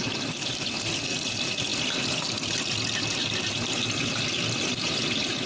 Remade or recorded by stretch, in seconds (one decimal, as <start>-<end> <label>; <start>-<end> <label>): 0.0-5.5 recorded